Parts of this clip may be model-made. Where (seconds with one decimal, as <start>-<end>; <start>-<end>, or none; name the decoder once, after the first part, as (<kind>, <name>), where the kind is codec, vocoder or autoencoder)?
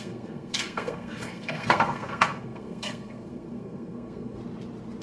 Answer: 0.0-4.4 (codec, SNAC)